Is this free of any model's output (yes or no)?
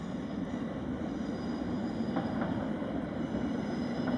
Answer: no